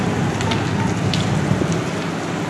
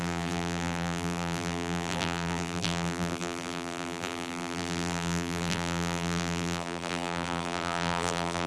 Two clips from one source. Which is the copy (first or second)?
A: second